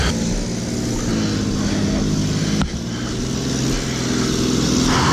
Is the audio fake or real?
real